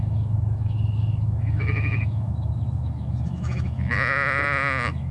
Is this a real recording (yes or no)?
no